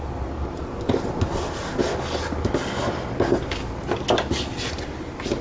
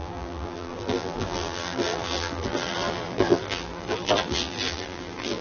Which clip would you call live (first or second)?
first